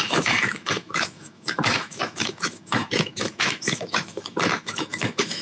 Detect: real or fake fake